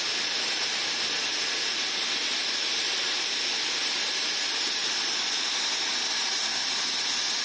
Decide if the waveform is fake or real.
fake